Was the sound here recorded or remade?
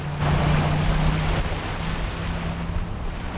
recorded